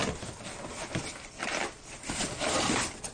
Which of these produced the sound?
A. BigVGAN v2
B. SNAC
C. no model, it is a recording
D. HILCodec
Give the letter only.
C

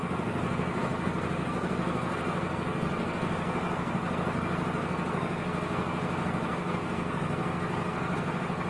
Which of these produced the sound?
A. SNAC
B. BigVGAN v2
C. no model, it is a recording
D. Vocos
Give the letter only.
A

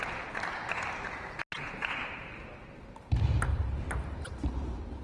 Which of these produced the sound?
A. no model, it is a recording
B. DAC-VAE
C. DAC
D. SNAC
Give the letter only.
A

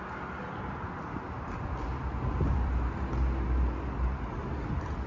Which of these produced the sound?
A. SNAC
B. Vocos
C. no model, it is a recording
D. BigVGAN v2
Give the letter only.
C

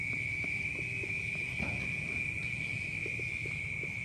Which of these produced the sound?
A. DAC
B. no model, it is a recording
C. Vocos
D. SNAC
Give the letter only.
B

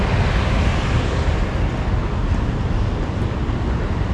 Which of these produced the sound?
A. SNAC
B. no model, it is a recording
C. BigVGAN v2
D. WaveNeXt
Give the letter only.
B